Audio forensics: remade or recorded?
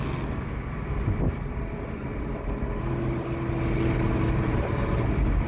recorded